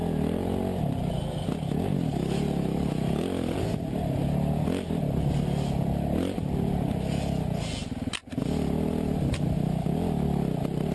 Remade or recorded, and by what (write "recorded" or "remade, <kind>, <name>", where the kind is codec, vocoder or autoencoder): recorded